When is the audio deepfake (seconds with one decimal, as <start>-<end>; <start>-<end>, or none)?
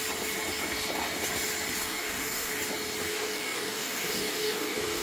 1.8-2.5; 3.1-5.0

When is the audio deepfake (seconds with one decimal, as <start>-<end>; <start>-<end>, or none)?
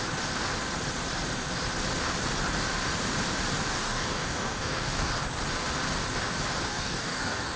3.7-5.1; 6.7-7.6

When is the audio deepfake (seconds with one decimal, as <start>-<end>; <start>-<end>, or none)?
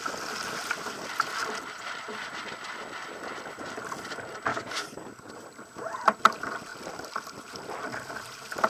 4.5-5.3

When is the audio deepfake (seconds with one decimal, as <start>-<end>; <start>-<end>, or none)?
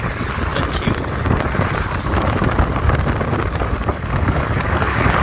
3.6-5.2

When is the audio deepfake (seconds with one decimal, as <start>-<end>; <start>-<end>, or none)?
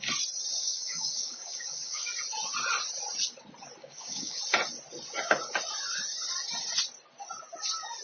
0.6-2.1; 3.8-4.4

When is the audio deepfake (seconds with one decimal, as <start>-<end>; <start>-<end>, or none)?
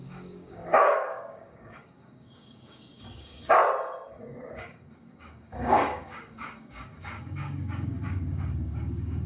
0.0-3.6; 4.3-9.3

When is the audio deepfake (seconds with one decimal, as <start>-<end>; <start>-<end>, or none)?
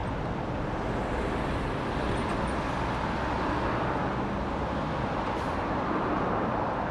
none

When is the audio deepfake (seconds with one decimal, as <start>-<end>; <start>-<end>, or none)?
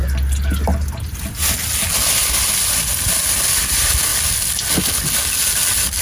none